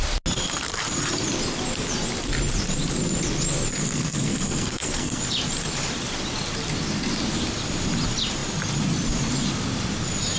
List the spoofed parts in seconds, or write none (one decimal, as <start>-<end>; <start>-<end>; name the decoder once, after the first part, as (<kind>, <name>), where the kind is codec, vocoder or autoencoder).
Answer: 3.8-5.2 (codec, SNAC)